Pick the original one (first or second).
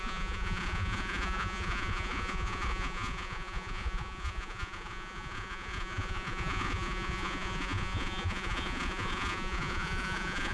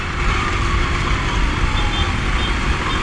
second